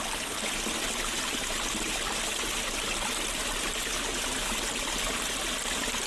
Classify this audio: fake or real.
real